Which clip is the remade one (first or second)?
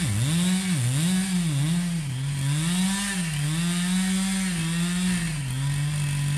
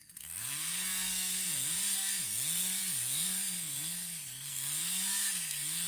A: second